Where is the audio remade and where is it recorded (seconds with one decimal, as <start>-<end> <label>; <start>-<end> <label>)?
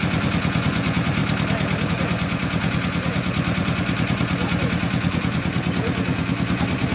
0.0-1.2 remade; 1.2-1.9 recorded; 1.9-6.9 remade